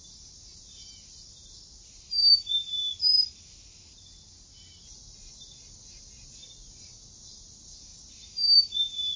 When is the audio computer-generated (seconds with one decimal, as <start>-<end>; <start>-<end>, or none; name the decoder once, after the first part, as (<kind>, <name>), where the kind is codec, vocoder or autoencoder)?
none